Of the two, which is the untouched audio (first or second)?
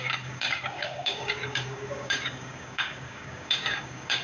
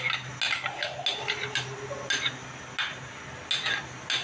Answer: second